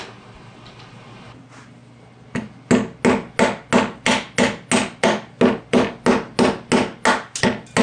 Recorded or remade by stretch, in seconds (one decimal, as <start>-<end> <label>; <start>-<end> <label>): 0.0-7.8 recorded